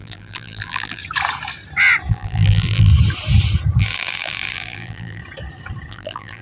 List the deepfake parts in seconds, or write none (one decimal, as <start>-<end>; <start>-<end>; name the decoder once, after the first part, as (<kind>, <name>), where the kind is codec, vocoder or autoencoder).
0.0-1.0 (vocoder, BigVGAN v2); 2.1-2.9; 3.8-5.2; 5.9-6.4